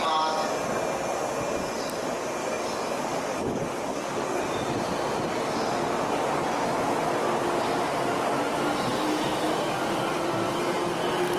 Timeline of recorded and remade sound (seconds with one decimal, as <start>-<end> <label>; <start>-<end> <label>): 0.0-2.4 recorded; 2.4-4.4 remade; 4.4-11.4 recorded